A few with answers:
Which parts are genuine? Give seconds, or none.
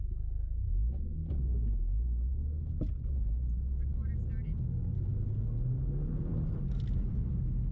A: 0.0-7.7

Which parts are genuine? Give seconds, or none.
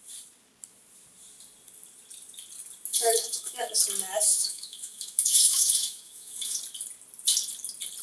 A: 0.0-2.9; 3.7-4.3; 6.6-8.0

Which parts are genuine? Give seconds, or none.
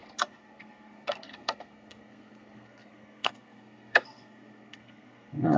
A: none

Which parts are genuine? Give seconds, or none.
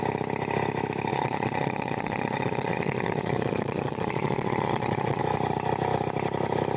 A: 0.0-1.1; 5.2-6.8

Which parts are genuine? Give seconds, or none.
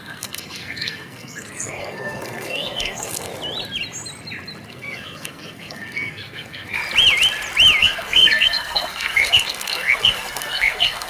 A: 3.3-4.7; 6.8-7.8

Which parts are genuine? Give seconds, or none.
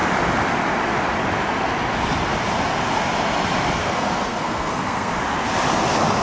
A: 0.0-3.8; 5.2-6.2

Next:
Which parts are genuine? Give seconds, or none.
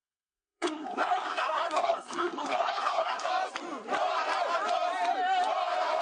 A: 3.3-6.0